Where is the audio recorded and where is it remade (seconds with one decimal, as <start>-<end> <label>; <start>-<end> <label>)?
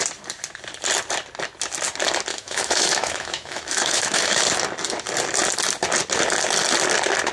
0.0-2.3 recorded; 2.3-4.4 remade; 4.4-7.3 recorded